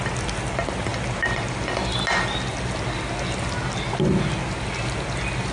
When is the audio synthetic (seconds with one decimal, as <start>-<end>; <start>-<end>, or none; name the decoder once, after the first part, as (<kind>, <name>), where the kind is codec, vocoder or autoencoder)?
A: none